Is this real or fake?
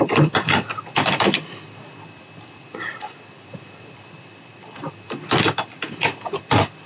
fake